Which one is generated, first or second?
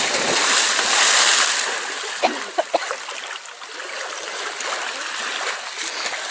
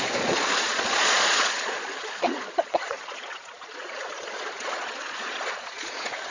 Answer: second